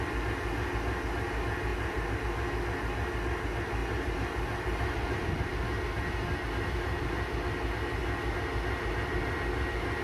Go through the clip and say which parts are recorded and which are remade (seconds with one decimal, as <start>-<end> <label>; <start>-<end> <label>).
0.0-1.7 recorded; 1.7-2.2 remade; 2.2-3.8 recorded; 3.8-5.5 remade; 5.5-10.0 recorded